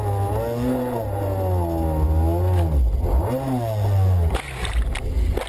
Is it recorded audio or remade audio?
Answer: recorded